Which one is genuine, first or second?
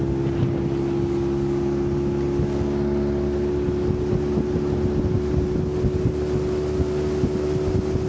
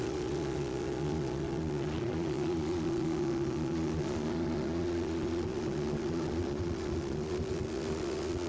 first